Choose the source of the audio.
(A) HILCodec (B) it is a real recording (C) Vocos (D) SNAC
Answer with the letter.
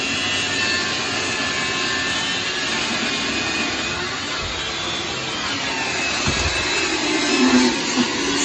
B